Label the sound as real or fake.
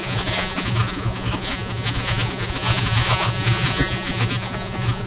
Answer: fake